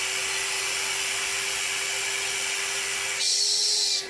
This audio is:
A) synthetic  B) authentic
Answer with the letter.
B